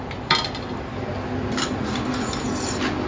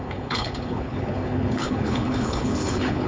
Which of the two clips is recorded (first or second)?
first